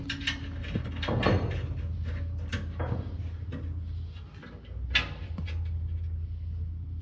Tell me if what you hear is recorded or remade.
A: recorded